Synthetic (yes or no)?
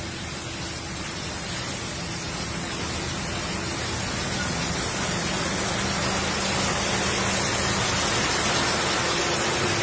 no